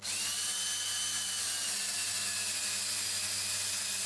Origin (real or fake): real